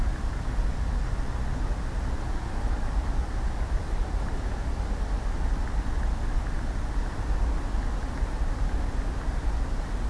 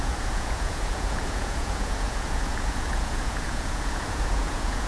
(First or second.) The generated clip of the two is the second